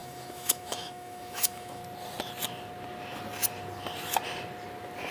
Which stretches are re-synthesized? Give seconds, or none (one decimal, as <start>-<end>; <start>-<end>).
0.0-1.8